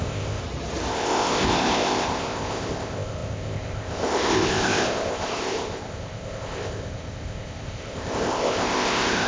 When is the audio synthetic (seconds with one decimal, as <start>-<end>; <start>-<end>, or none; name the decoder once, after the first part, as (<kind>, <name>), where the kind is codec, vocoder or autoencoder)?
0.0-0.4 (codec, ZipCodec); 0.9-9.3